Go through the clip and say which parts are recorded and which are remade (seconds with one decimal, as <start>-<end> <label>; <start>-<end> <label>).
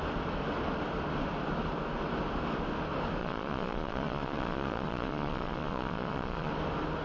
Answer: 0.0-3.2 recorded; 3.2-6.5 remade; 6.5-7.0 recorded